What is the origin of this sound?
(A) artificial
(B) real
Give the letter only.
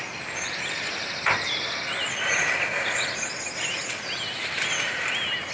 B